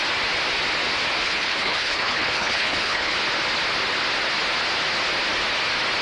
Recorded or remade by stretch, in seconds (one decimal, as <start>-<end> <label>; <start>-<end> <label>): 0.0-1.2 recorded; 1.2-3.1 remade; 3.1-6.0 recorded